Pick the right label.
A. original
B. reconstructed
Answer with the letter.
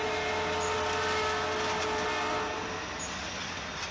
A